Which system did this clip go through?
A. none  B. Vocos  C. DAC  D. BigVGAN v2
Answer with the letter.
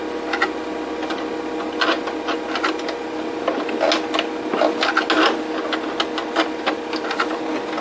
A